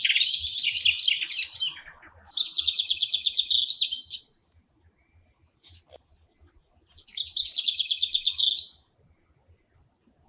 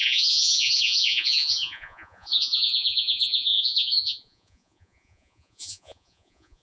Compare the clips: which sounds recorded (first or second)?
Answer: first